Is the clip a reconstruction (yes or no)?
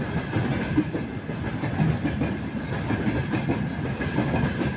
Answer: no